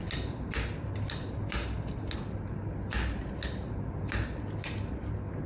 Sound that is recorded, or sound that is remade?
recorded